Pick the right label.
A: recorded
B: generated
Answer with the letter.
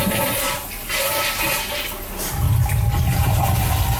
A